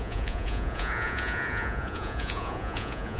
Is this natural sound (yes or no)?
no